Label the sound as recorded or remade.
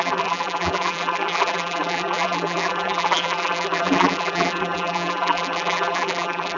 remade